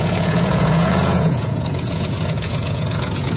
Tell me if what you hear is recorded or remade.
remade